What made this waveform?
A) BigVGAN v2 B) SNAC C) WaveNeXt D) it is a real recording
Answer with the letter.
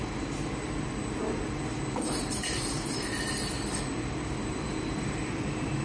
A